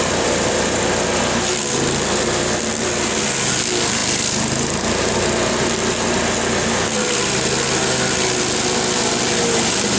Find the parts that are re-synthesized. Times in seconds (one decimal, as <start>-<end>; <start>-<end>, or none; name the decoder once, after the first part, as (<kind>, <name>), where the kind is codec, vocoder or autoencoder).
none